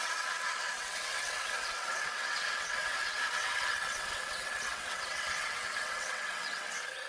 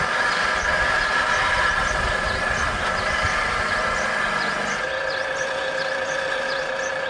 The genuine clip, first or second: second